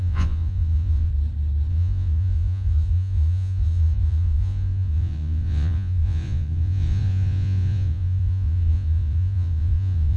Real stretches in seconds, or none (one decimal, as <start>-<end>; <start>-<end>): 1.1-1.7